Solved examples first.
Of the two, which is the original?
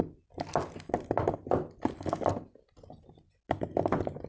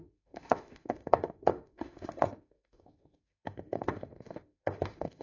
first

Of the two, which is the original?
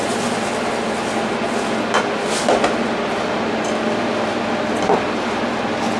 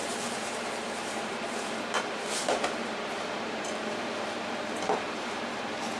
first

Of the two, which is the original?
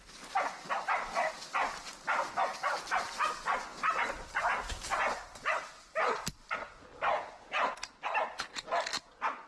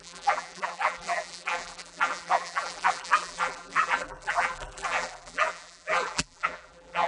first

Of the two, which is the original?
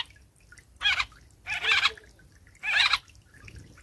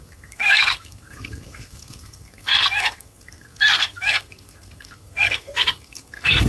first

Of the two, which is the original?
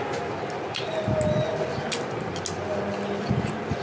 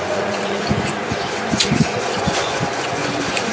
first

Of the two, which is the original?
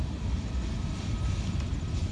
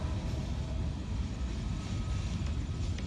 second